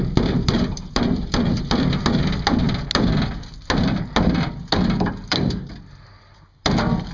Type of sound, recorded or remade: recorded